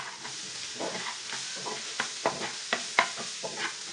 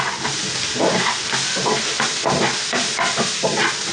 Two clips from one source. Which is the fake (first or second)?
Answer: second